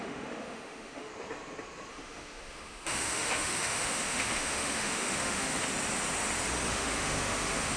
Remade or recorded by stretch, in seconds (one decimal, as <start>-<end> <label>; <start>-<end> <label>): 0.0-1.1 remade; 1.1-1.9 recorded; 1.9-5.7 remade; 5.7-6.7 recorded; 6.7-7.8 remade